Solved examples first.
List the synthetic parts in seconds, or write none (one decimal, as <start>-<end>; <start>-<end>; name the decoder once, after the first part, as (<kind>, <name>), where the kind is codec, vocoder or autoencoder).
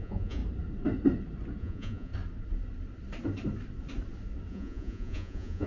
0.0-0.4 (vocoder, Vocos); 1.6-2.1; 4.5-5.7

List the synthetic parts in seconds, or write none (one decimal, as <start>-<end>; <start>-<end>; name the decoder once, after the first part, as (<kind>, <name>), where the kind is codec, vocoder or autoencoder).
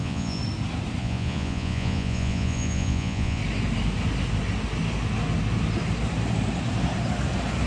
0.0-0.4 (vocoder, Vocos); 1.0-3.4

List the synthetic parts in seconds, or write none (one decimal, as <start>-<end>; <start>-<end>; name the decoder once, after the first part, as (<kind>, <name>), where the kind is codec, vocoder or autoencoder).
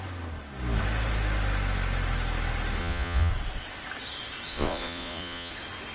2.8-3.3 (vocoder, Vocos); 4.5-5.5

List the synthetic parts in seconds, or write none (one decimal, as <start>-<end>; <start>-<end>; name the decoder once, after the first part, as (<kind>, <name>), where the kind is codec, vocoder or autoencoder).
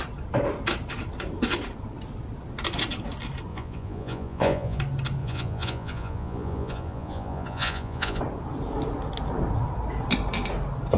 3.5-4.8 (vocoder, Vocos); 5.2-8.2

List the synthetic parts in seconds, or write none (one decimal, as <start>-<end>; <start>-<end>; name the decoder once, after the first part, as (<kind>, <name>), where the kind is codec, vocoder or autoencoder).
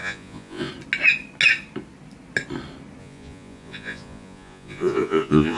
0.0-0.7 (vocoder, Vocos); 3.0-5.6